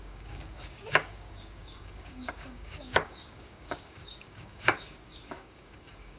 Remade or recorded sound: remade